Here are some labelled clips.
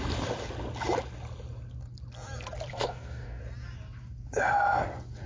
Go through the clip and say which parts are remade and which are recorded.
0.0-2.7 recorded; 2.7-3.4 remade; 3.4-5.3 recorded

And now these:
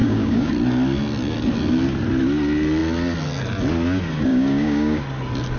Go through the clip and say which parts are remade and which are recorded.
0.0-0.5 remade; 0.5-4.3 recorded; 4.3-5.0 remade; 5.0-5.6 recorded

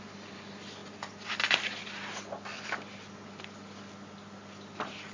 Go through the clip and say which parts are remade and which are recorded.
0.0-5.1 recorded